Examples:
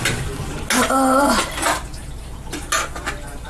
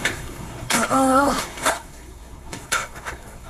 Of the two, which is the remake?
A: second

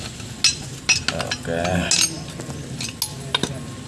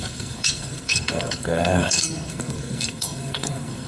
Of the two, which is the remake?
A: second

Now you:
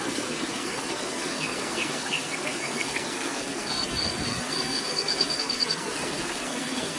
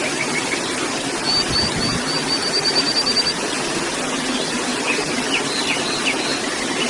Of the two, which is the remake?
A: first